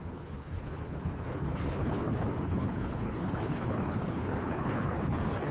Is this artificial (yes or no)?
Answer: yes